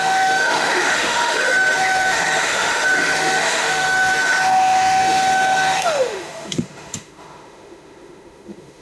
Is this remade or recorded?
remade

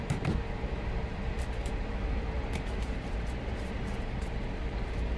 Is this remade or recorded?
remade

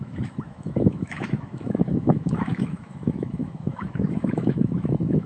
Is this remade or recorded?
remade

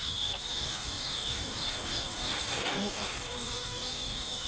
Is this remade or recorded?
remade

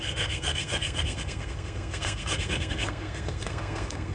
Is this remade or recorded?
remade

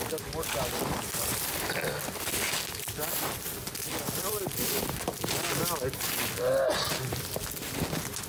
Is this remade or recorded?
recorded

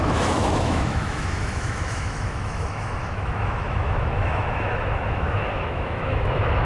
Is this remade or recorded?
remade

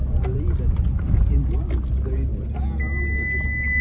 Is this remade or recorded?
recorded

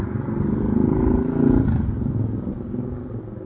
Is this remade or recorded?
recorded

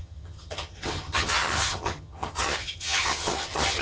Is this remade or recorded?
remade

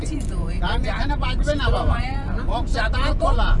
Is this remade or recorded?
remade